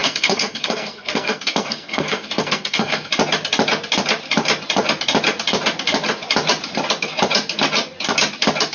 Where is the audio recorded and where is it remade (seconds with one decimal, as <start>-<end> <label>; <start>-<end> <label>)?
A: 0.0-3.1 remade; 3.1-8.7 recorded